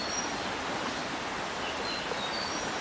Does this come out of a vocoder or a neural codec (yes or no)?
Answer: no